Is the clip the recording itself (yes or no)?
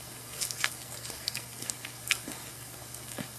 no